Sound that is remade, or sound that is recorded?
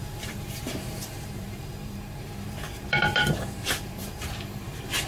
remade